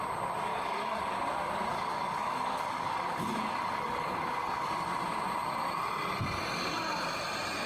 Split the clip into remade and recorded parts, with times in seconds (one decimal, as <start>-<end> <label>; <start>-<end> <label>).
0.0-0.5 recorded; 0.5-1.0 remade; 1.0-1.7 recorded; 1.7-4.7 remade; 4.7-7.7 recorded